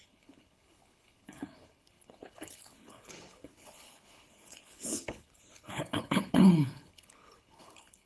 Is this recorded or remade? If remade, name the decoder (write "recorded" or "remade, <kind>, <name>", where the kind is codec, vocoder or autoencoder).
remade, codec, HILCodec